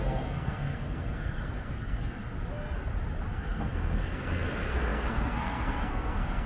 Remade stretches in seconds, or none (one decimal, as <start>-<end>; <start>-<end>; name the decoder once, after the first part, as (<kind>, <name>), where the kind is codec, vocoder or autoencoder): 0.0-2.2 (codec, SNAC); 3.3-6.5